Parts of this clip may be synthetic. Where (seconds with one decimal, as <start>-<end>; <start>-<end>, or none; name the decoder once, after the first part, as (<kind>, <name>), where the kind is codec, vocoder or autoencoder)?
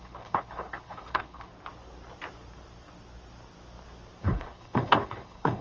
0.0-1.5 (codec, HILCodec); 4.2-5.6